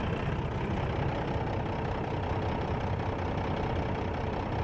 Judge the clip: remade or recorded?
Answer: recorded